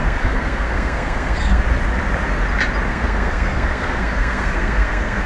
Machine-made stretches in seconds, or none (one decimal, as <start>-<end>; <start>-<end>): 0.0-1.6; 2.9-5.3